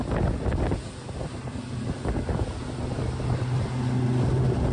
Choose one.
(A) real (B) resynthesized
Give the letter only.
A